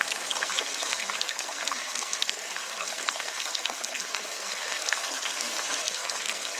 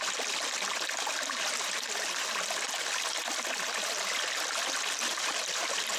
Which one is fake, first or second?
first